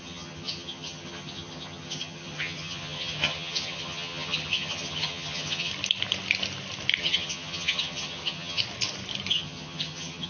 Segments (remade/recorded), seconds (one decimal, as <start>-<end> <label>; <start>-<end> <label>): 0.0-5.7 remade; 5.7-7.0 recorded; 7.0-8.6 remade; 8.6-9.3 recorded; 9.3-10.3 remade

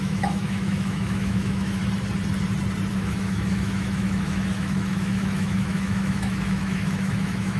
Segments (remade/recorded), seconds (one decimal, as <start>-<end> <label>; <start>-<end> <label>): 0.0-1.8 remade; 1.8-2.9 recorded; 2.9-7.6 remade